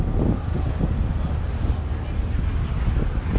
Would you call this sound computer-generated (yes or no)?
no